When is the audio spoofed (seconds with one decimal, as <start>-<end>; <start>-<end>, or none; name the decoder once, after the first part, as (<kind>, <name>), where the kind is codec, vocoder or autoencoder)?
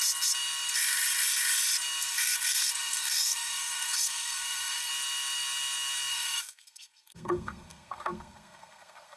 2.1-4.9 (codec, SNAC); 6.1-9.2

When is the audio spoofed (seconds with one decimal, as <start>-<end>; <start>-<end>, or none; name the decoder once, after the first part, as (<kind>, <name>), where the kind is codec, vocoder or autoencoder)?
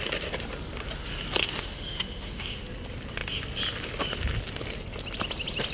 1.4-2.6 (autoencoder, DAC-VAE)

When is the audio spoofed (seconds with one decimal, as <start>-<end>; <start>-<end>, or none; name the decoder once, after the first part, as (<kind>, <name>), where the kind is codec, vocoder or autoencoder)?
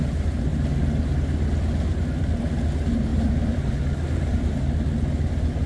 none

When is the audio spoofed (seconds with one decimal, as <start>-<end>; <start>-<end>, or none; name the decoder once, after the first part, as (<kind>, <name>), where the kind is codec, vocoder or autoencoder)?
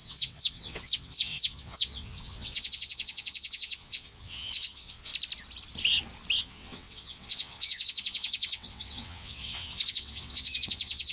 0.0-5.1 (vocoder, WaveNeXt); 6.4-11.1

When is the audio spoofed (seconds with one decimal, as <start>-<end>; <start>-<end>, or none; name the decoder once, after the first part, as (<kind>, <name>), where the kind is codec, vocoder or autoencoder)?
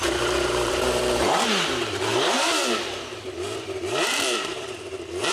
0.0-5.3 (vocoder, BigVGAN v2)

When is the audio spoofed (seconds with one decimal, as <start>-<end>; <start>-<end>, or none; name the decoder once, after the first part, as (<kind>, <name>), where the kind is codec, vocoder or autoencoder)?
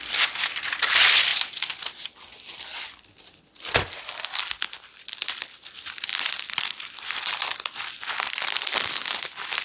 0.0-1.3 (vocoder, BigVGAN v2); 2.2-9.0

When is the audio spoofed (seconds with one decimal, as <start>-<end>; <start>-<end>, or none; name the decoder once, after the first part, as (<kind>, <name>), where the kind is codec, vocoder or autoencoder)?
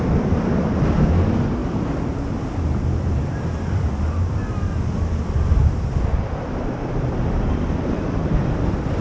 none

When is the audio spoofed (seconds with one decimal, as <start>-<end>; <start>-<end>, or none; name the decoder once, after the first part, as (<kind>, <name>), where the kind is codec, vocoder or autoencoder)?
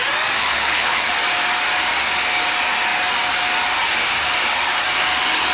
0.4-1.1 (codec, HILCodec)